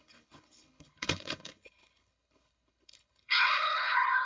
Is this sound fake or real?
fake